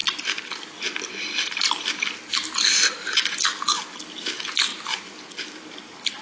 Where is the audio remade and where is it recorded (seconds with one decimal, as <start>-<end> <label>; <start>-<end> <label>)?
0.0-6.2 recorded